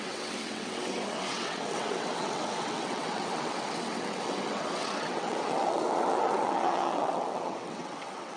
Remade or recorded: remade